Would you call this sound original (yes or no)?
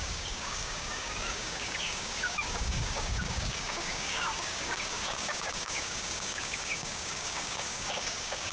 no